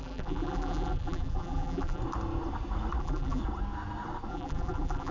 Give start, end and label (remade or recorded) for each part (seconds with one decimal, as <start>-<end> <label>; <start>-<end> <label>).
0.0-2.0 remade; 2.0-3.0 recorded; 3.0-3.4 remade; 3.4-4.3 recorded; 4.3-5.1 remade